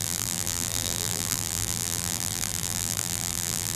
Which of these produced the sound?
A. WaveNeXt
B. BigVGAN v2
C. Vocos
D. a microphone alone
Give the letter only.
B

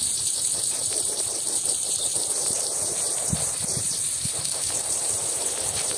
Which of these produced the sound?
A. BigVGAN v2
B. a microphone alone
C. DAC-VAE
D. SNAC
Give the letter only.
A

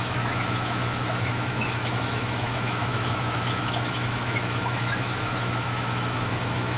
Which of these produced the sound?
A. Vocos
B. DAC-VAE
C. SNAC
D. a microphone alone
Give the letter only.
B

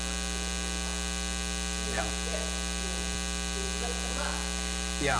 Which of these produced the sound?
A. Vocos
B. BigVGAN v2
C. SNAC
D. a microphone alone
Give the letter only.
D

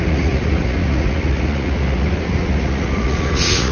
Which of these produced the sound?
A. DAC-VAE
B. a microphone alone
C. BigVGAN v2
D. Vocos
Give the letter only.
D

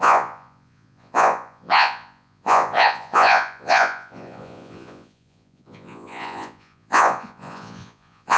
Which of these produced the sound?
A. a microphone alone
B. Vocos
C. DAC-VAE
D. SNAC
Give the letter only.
B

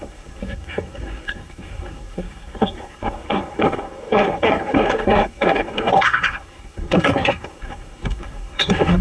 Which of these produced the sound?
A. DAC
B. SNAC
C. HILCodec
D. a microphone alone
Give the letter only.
B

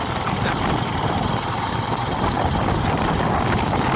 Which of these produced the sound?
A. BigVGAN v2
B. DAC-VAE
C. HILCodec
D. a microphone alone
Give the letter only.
D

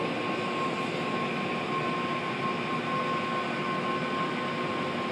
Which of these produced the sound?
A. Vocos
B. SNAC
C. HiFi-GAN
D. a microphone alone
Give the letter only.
D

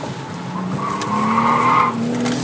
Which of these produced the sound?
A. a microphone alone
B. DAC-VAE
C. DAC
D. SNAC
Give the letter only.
A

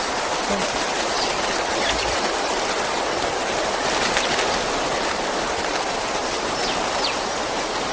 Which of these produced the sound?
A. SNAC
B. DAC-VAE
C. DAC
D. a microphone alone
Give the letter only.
D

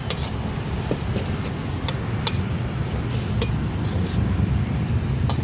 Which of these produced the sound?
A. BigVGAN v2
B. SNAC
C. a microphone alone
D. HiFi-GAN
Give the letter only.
C